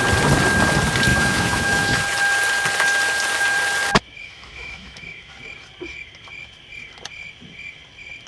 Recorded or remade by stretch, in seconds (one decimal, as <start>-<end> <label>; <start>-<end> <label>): 0.0-1.1 recorded; 1.1-2.0 remade; 2.0-4.2 recorded; 4.2-5.3 remade; 5.3-8.3 recorded